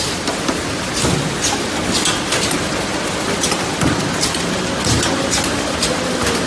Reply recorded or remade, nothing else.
recorded